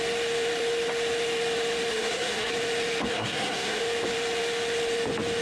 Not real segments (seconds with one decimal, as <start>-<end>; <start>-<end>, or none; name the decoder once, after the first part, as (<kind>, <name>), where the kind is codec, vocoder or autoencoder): 1.9-2.5 (codec, SNAC); 3.1-3.8